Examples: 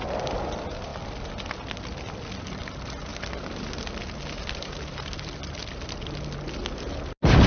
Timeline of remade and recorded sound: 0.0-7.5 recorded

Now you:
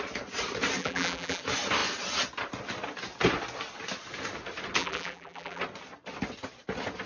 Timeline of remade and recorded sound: 0.0-0.8 recorded; 0.8-1.4 remade; 1.4-4.8 recorded; 4.8-5.6 remade; 5.6-7.1 recorded

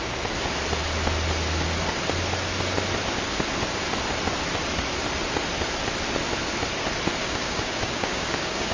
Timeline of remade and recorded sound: 0.0-7.2 recorded; 7.2-8.7 remade